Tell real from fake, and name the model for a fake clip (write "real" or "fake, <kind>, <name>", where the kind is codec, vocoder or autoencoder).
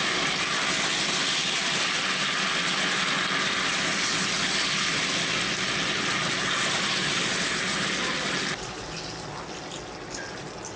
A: real